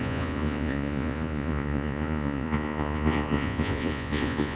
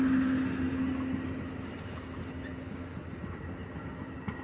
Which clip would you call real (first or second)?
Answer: second